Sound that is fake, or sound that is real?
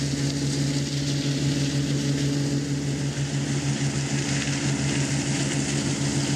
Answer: real